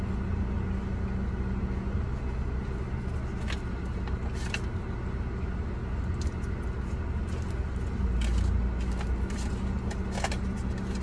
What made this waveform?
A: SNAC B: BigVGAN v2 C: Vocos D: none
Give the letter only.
D